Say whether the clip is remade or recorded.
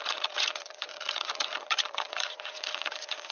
remade